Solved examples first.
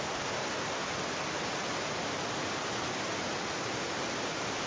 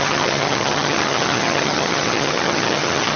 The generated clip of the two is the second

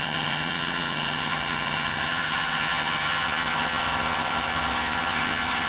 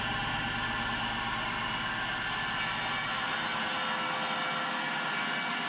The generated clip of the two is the first